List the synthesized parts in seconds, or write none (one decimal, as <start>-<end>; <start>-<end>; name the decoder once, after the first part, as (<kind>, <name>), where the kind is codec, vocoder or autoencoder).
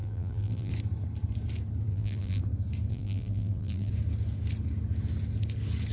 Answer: 0.0-0.7 (vocoder, BigVGAN v2); 1.9-2.4; 2.9-3.9